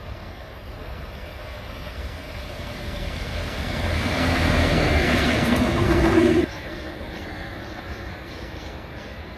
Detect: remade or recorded remade